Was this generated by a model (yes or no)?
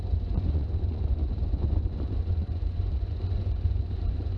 yes